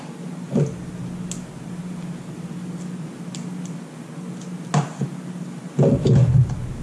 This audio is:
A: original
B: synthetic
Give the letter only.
A